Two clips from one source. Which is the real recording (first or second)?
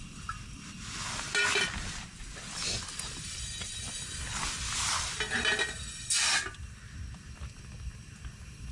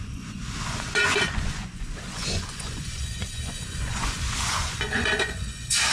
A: first